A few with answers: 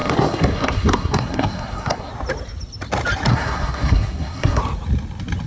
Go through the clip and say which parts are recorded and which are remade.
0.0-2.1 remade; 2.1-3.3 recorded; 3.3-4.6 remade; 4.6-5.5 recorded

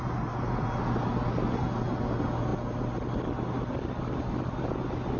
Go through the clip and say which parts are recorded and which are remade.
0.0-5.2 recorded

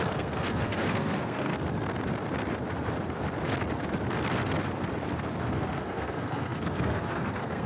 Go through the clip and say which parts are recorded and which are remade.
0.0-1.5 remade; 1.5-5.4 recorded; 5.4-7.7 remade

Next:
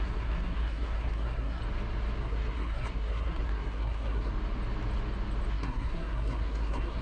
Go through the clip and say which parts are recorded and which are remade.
0.0-1.6 remade; 1.6-2.2 recorded; 2.2-4.3 remade; 4.3-5.5 recorded; 5.5-7.0 remade

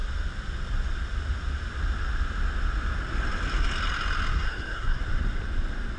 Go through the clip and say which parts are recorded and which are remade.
0.0-4.3 recorded; 4.3-5.0 remade; 5.0-6.0 recorded

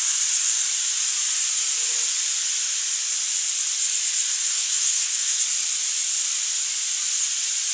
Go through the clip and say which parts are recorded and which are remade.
0.0-4.3 recorded; 4.3-5.4 remade; 5.4-7.7 recorded

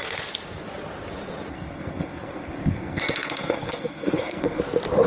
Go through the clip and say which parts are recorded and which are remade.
0.0-1.5 recorded; 1.5-4.6 remade; 4.6-5.1 recorded